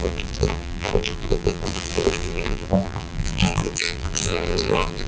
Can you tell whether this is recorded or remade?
remade